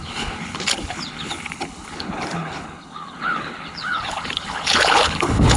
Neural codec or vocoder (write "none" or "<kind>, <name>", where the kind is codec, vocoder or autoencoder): codec, HILCodec